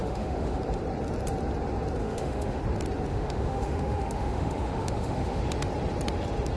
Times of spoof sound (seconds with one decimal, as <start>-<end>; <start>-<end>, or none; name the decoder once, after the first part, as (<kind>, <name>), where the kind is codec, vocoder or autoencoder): 0.0-0.6 (autoencoder, DAC-VAE); 2.0-2.6; 3.1-5.4